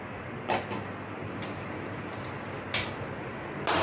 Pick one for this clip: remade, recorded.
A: recorded